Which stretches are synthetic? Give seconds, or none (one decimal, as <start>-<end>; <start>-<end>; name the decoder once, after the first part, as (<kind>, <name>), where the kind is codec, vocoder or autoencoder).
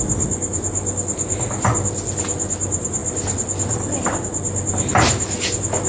none